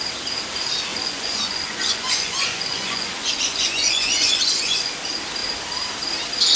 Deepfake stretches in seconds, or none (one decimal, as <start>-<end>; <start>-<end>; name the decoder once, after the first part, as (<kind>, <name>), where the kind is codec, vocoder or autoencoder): 0.9-4.9 (vocoder, Vocos)